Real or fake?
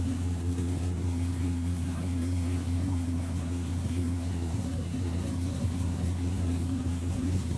fake